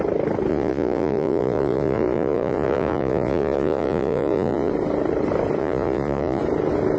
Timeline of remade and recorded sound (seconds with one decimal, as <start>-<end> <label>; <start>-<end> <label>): 0.0-0.5 recorded; 0.5-4.7 remade; 4.7-5.6 recorded; 5.6-6.4 remade; 6.4-7.0 recorded